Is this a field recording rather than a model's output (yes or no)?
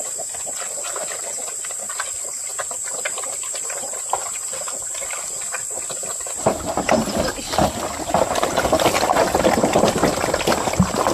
yes